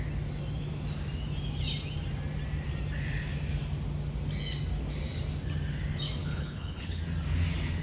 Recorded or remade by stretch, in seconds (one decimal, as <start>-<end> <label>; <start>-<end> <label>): 0.0-6.2 recorded; 6.2-7.0 remade; 7.0-7.8 recorded